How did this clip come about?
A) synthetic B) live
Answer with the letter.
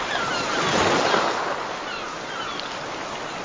B